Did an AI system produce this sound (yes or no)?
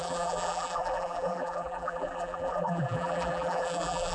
yes